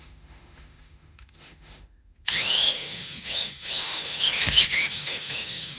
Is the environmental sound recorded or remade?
remade